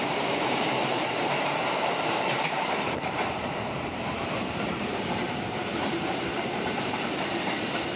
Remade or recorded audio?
remade